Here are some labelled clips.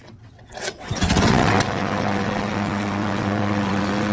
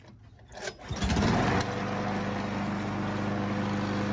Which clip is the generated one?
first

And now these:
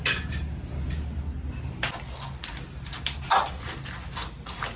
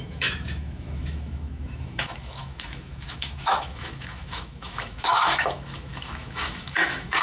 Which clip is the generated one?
second